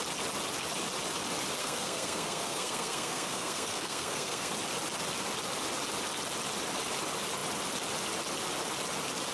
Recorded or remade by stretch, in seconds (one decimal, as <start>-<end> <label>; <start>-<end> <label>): 0.0-1.6 recorded; 1.6-4.5 remade; 4.5-9.3 recorded

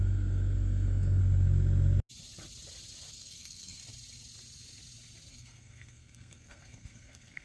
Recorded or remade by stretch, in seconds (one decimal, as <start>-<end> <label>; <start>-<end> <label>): 0.0-1.2 remade; 1.2-3.1 recorded; 3.1-3.8 remade; 3.8-5.3 recorded; 5.3-7.4 remade

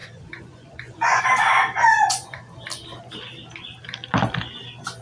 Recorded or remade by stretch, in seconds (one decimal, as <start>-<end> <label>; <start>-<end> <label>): 0.0-1.2 remade; 1.2-1.9 recorded; 1.9-2.4 remade; 2.4-5.0 recorded

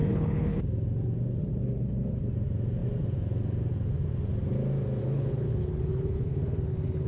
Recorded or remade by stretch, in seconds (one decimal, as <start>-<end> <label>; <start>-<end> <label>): 0.0-0.6 remade; 0.6-1.4 recorded; 1.4-2.2 remade; 2.2-5.0 recorded; 5.0-7.1 remade